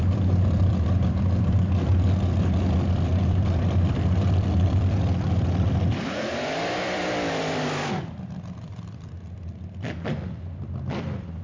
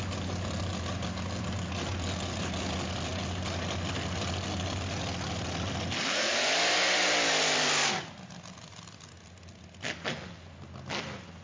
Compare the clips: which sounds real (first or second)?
second